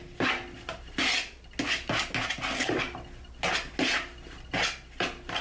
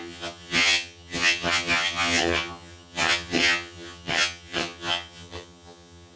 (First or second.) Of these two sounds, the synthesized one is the second